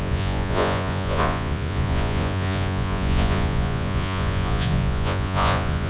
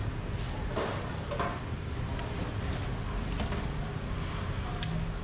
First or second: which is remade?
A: first